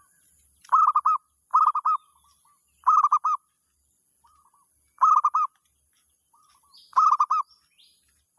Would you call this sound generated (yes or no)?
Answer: no